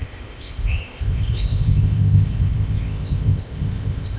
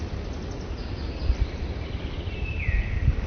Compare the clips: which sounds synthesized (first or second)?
first